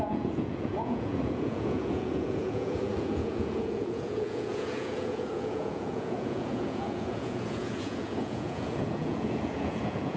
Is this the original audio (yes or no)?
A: no